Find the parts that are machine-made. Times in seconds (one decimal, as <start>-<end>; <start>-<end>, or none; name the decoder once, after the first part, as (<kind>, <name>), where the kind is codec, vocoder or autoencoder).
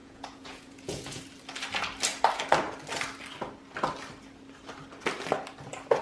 0.0-1.2 (vocoder, Vocos)